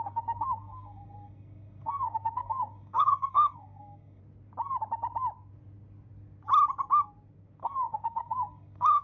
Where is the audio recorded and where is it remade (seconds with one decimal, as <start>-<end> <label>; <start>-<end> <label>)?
0.0-4.2 remade; 4.2-7.6 recorded; 7.6-9.0 remade